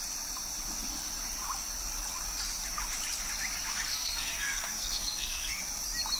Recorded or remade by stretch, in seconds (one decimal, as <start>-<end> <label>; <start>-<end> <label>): 0.0-3.7 recorded; 3.7-5.6 remade; 5.6-6.2 recorded

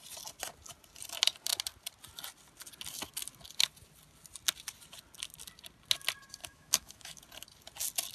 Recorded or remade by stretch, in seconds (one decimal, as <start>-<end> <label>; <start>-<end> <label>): 0.0-6.4 recorded; 6.4-7.2 remade; 7.2-8.1 recorded

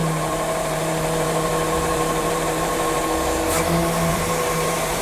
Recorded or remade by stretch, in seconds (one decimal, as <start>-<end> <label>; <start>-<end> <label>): 0.0-3.0 remade; 3.0-4.1 recorded; 4.1-5.0 remade

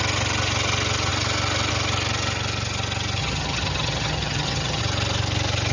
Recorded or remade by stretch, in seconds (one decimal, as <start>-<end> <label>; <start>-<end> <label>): 0.0-3.2 recorded; 3.2-4.8 remade; 4.8-5.7 recorded

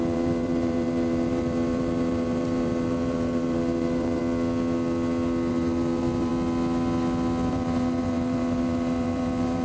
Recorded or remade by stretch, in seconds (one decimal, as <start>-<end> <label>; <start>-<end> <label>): 0.0-4.2 remade; 4.2-5.5 recorded; 5.5-6.3 remade; 6.3-7.5 recorded; 7.5-9.6 remade

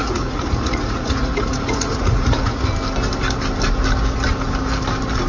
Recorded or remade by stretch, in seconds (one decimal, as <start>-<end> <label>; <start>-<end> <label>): 0.0-2.6 remade; 2.6-5.3 recorded